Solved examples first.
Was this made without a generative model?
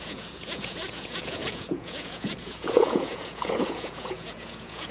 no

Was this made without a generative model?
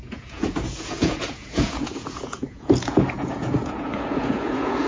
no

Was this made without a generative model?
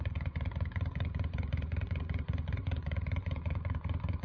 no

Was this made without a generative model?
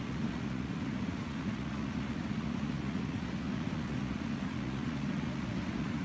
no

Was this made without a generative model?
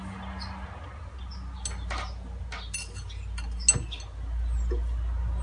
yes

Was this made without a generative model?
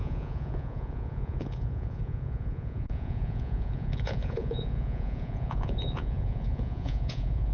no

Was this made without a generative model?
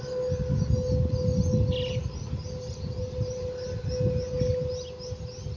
yes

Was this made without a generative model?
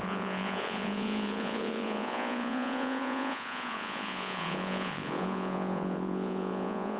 no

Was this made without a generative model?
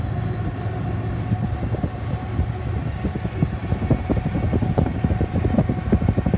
yes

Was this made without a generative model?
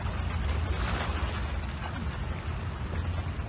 yes